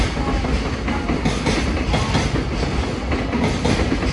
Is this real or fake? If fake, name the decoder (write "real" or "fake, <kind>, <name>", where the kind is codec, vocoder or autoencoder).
real